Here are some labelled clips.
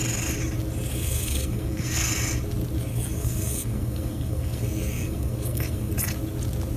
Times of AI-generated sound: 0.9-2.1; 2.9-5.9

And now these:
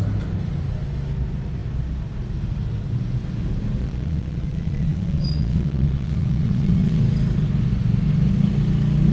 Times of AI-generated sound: 3.8-7.0

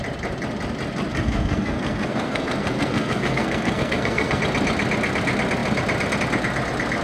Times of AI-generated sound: 1.1-4.4